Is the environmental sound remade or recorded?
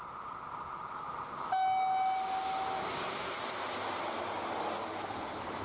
recorded